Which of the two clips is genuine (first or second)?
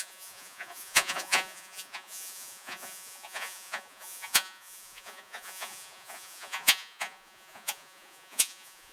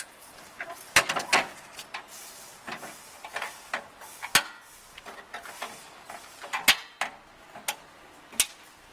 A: second